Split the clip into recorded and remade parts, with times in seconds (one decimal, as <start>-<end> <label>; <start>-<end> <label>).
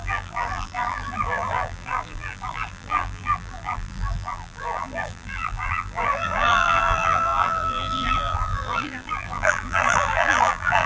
0.0-10.9 remade